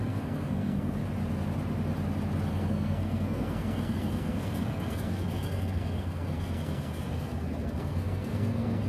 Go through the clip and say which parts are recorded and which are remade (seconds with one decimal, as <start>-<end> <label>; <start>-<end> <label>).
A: 0.0-1.0 remade; 1.0-2.5 recorded; 2.5-8.9 remade